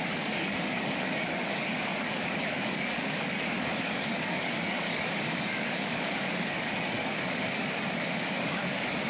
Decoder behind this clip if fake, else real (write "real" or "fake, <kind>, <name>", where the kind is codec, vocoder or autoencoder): fake, codec, DAC